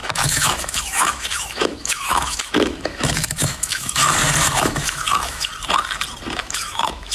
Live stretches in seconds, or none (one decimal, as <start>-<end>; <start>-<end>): 4.0-4.6; 5.5-6.4